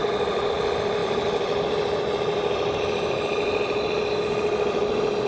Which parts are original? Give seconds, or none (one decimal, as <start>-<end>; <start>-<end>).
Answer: 0.0-5.3

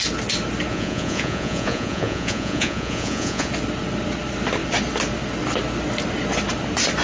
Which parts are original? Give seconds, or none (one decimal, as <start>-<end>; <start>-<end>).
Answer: 0.0-0.7; 3.5-7.0

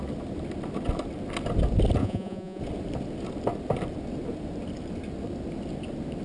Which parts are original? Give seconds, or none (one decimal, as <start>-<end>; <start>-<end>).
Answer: 0.0-2.0; 2.6-6.2

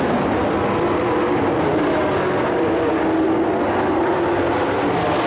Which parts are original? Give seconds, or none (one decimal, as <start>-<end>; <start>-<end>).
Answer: 0.0-5.3

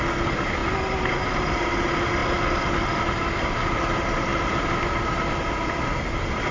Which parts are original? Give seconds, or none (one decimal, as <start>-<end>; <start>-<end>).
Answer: 0.0-6.5

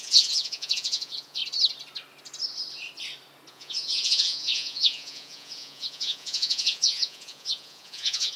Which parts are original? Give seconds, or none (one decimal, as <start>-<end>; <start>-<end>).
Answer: 1.4-3.5

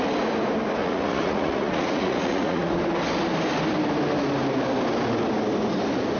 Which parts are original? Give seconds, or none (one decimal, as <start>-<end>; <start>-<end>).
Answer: 0.0-0.8; 2.8-6.2